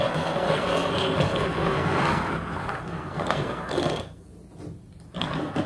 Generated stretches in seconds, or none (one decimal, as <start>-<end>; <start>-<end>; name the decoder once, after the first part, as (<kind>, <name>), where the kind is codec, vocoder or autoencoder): 0.0-4.3 (codec, SNAC); 5.2-5.7